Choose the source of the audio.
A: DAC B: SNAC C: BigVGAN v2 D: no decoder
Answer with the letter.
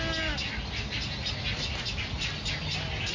D